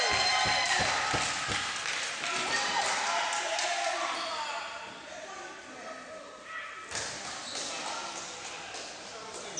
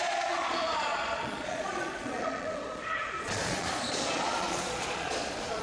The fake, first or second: second